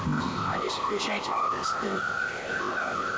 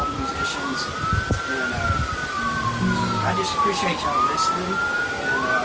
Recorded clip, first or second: second